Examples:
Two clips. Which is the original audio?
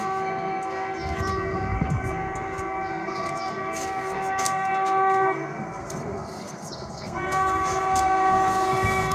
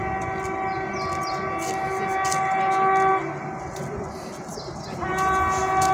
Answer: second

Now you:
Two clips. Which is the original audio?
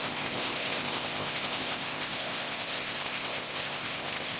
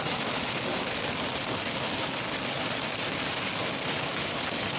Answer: second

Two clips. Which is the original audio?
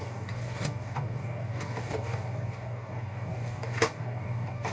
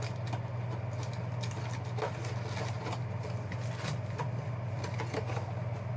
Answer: second